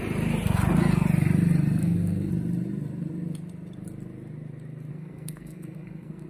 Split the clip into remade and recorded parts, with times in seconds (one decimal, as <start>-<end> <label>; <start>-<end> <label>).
0.0-1.8 recorded; 1.8-2.3 remade; 2.3-4.9 recorded; 4.9-6.3 remade